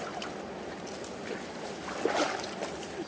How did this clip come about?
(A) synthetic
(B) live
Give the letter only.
B